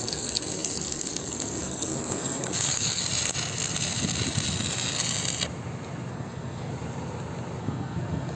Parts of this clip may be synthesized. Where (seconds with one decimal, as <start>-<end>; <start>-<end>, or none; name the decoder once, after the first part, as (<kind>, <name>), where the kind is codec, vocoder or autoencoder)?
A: 0.0-3.0 (codec, SNAC); 6.1-6.7; 7.6-8.4